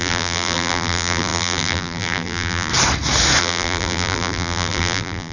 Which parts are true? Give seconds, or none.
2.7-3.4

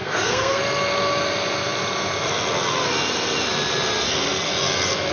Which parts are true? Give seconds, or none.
0.6-5.1

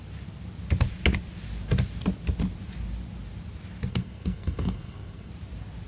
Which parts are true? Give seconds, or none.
0.0-3.9; 5.3-5.9